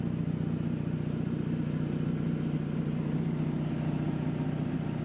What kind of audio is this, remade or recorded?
recorded